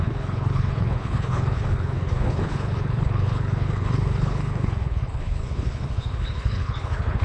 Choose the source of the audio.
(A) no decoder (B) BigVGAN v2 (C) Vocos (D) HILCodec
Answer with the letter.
D